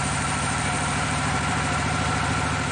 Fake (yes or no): yes